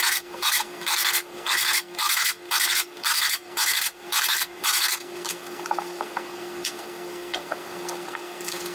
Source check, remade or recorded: remade